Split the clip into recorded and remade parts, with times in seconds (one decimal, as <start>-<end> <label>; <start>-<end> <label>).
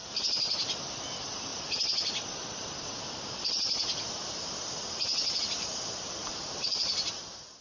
0.0-6.2 recorded; 6.2-7.6 remade